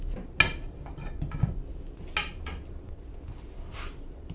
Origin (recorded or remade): recorded